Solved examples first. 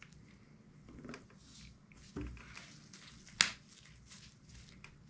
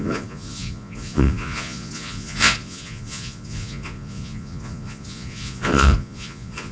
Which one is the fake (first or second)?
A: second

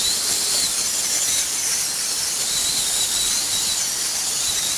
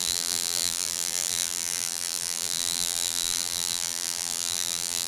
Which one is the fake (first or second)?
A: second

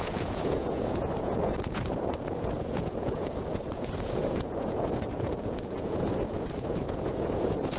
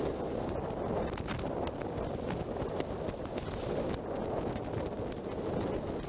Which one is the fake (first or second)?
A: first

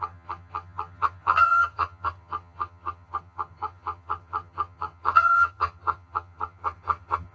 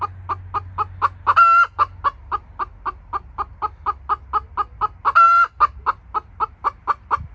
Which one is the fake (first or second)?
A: first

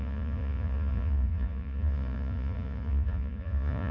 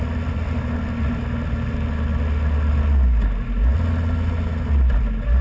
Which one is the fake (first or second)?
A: first